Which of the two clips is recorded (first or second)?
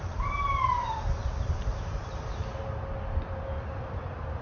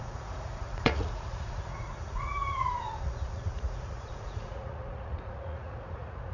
first